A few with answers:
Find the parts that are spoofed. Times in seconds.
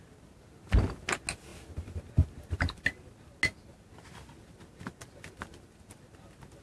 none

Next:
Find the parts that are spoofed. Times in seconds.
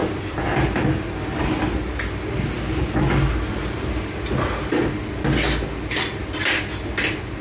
none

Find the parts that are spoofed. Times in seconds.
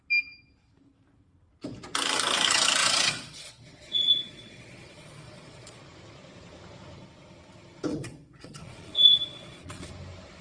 2.8-5.8; 7.9-9.9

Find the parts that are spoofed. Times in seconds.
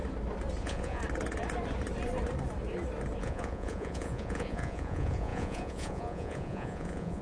0.6-1.0; 3.2-7.2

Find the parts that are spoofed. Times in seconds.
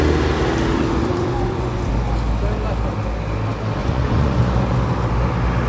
0.7-1.9; 3.8-4.4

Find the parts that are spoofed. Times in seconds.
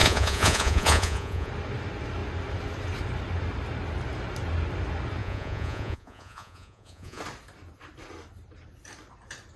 0.0-1.5; 5.2-7.2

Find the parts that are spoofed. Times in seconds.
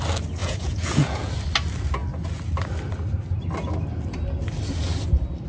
0.4-1.3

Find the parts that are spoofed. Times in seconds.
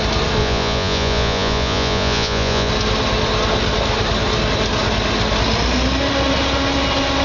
0.4-2.7